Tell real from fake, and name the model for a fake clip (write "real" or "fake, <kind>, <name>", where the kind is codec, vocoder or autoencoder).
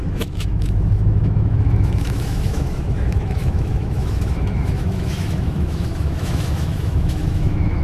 fake, autoencoder, DAC-VAE